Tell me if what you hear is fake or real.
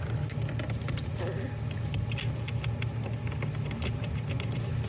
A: real